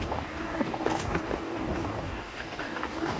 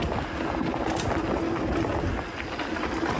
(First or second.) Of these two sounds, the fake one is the first